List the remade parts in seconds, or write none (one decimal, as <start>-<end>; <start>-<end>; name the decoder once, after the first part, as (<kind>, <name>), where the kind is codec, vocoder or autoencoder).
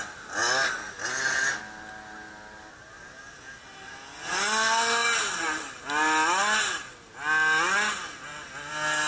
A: none